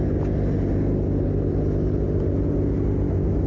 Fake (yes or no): no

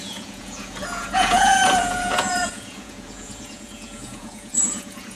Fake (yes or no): yes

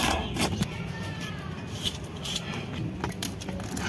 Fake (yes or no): no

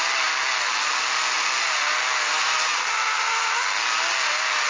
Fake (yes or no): no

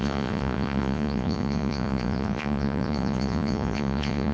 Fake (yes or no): yes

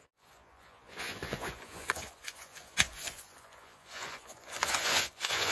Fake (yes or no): yes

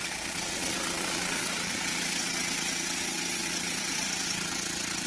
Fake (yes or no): yes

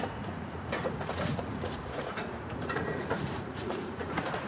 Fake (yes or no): yes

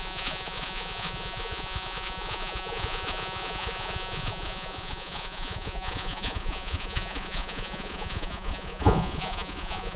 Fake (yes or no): yes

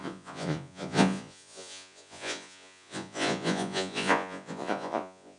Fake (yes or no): yes